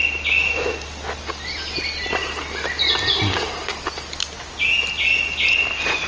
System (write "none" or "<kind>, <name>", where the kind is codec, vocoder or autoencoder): none